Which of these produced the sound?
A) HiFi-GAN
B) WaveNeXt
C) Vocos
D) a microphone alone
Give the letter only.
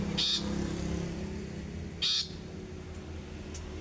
D